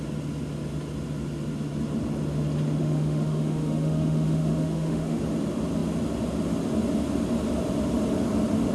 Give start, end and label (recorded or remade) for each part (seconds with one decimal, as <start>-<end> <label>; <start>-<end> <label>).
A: 0.0-2.8 recorded; 2.8-5.2 remade; 5.2-8.7 recorded